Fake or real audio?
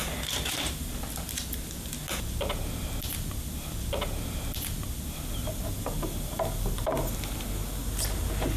real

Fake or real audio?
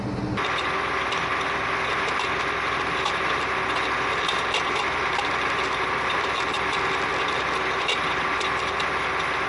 real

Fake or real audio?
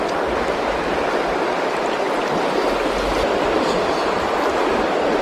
real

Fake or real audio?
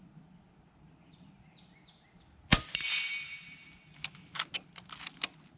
real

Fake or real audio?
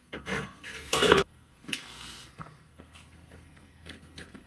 fake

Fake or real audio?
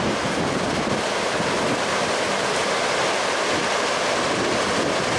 real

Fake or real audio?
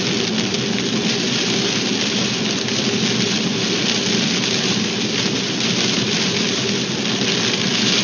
real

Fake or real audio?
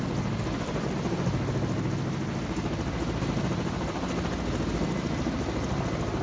real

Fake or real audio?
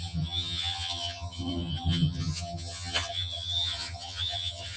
fake